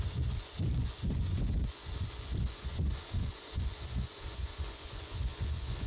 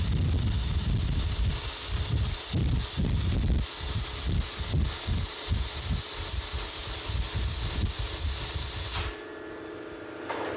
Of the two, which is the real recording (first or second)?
second